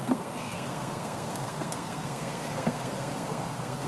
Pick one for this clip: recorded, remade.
remade